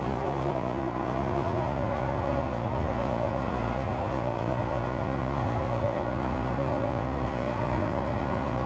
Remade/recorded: remade